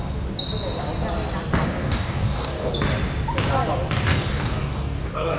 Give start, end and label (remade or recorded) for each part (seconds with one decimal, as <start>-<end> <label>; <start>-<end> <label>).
0.0-1.8 recorded; 1.8-2.7 remade; 2.7-4.1 recorded; 4.1-5.4 remade